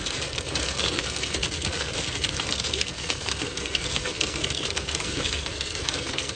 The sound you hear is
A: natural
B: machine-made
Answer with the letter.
B